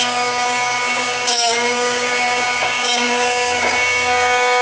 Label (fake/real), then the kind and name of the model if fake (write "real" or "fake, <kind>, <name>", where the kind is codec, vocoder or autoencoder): fake, codec, DAC